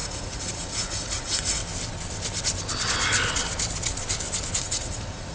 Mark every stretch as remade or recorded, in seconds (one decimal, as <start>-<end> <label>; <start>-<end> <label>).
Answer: 0.0-1.6 remade; 1.6-4.6 recorded; 4.6-5.3 remade